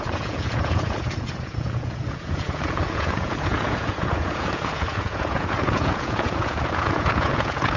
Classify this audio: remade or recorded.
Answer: remade